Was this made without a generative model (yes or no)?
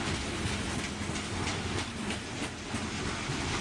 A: yes